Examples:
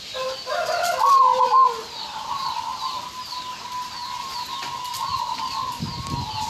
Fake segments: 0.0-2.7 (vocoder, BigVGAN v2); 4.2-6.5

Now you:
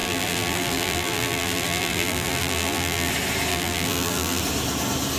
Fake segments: 0.0-3.1 (vocoder, BigVGAN v2); 3.5-4.4

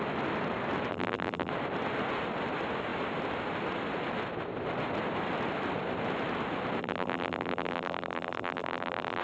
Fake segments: 0.9-1.5 (vocoder, BigVGAN v2); 6.8-9.2

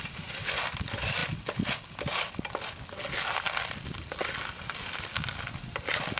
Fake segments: none

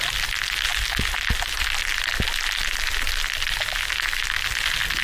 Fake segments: none

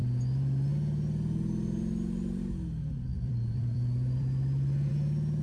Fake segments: 2.8-4.9 (vocoder, BigVGAN v2)

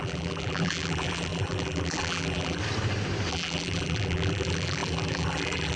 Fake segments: 0.0-2.6 (vocoder, BigVGAN v2); 3.3-5.8